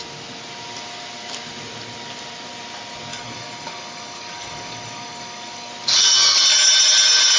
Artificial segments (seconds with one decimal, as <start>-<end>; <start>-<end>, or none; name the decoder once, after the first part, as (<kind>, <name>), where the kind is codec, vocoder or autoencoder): 3.1-5.7 (codec, DAC)

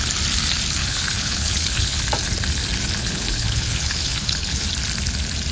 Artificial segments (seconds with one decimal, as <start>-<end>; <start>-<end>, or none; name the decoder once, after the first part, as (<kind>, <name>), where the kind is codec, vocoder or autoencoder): 0.8-2.0 (codec, HILCodec); 3.0-4.7

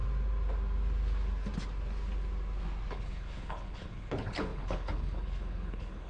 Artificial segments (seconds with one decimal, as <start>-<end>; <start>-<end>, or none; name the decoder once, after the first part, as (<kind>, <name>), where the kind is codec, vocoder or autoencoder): 2.9-6.1 (codec, HILCodec)

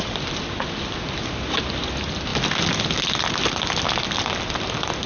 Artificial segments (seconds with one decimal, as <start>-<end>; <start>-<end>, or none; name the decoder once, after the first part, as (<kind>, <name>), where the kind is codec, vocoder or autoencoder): none

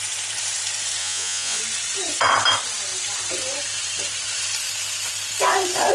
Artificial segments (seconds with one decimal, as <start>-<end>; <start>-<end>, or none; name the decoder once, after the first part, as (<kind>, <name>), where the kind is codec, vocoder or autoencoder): 1.0-1.6 (vocoder, Vocos)

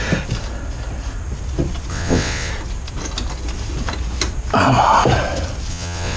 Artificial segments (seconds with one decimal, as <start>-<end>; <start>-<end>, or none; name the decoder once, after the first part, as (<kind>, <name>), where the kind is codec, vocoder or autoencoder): 1.9-2.5 (vocoder, WaveNeXt); 5.7-6.2

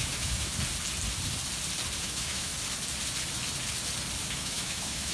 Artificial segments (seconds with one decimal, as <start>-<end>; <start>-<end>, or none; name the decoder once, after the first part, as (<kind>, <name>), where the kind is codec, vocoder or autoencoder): 0.0-0.5 (autoencoder, DAC-VAE); 2.0-2.5; 4.2-5.1

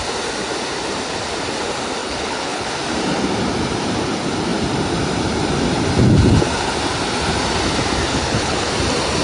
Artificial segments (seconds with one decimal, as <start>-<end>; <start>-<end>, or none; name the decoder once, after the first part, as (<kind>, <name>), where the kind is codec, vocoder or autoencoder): 2.0-2.7 (codec, HILCodec); 8.1-8.7